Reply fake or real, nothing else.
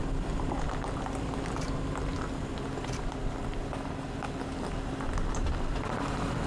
real